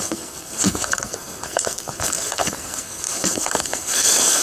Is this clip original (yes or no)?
no